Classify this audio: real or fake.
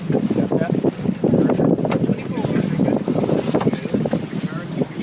real